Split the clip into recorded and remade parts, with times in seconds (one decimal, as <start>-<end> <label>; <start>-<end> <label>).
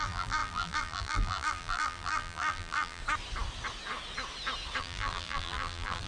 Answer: 0.0-3.0 remade; 3.0-4.8 recorded; 4.8-6.1 remade